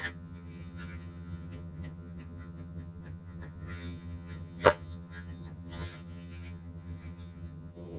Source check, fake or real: fake